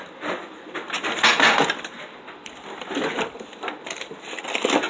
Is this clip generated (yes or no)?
no